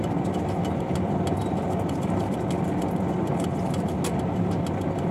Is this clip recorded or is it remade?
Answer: recorded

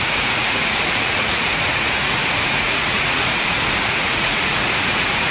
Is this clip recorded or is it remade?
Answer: remade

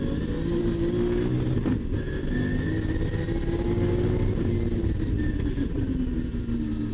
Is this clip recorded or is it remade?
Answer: recorded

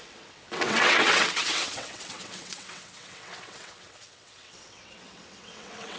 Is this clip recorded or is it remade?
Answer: remade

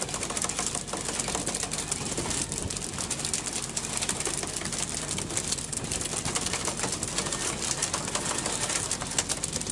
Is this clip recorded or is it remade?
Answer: recorded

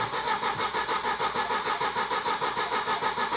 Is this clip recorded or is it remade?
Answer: recorded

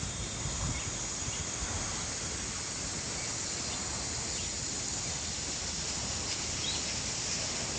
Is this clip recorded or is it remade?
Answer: recorded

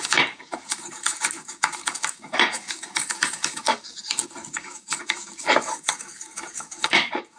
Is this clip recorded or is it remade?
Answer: remade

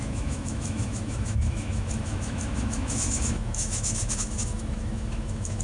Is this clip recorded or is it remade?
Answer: remade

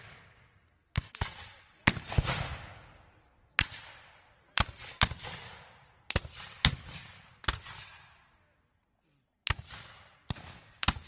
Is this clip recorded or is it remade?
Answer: recorded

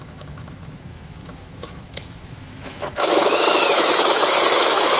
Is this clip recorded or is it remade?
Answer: remade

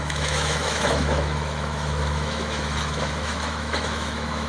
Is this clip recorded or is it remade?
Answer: remade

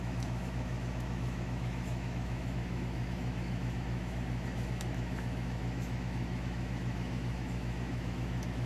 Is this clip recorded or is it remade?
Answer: remade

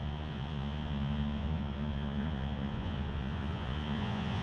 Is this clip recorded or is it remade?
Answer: remade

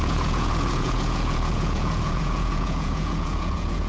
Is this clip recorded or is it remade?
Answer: remade